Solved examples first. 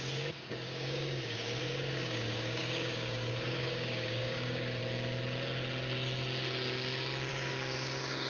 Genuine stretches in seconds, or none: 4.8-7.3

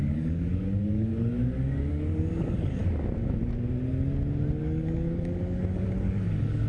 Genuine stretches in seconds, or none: 1.1-1.9; 2.8-4.6

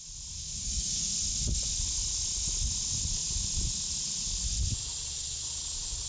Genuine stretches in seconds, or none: 0.0-0.4; 1.1-6.1

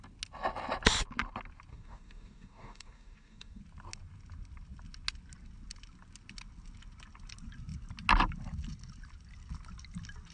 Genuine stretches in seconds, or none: 0.0-1.7; 3.6-10.3

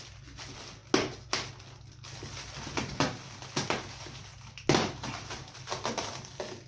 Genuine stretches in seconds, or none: 0.0-6.7

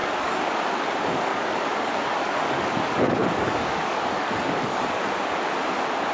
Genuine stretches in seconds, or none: 0.6-1.3; 5.0-6.1

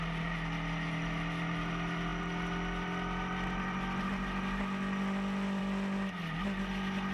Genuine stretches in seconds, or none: 0.0-7.1

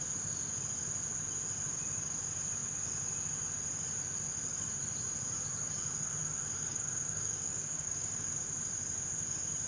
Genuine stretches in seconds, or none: 0.0-6.7; 8.3-9.7